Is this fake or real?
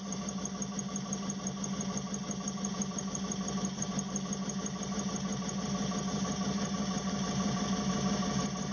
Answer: real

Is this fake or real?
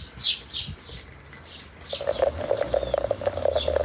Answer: real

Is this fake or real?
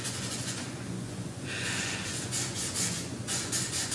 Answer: fake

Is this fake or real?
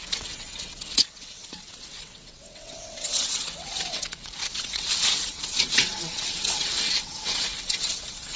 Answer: fake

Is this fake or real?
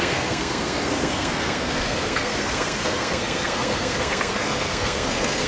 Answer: fake